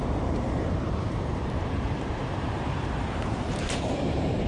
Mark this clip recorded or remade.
remade